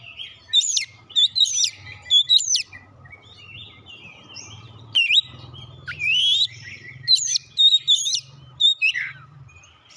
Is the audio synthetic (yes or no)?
yes